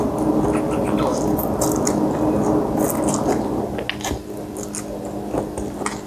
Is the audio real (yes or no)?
yes